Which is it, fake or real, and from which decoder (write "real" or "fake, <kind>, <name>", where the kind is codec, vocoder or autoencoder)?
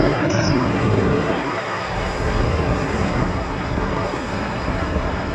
fake, codec, SNAC